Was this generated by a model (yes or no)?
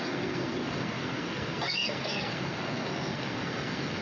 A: yes